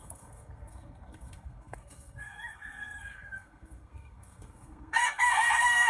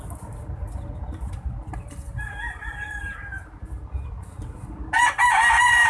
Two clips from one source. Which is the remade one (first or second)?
first